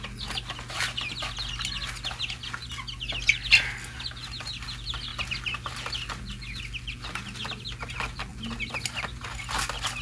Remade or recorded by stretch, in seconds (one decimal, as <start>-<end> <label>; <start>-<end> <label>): 0.0-10.0 recorded